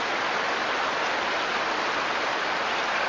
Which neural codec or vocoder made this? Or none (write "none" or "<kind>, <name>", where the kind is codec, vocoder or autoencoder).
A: none